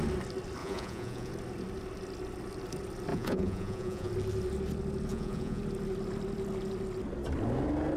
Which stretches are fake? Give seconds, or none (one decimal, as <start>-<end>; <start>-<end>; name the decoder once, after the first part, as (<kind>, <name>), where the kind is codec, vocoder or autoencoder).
0.6-1.3 (vocoder, Vocos); 3.1-4.1; 5.1-5.6